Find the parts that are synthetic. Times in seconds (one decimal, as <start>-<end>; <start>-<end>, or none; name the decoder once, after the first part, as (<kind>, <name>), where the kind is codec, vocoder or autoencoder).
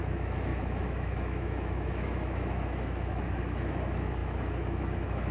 0.0-5.3 (autoencoder, DAC-VAE)